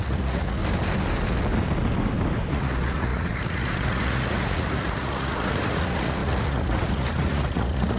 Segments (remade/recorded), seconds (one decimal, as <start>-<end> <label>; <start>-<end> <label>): 0.0-0.6 remade; 0.6-2.5 recorded; 2.5-8.0 remade